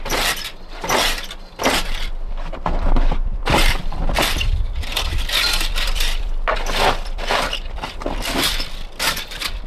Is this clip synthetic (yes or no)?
yes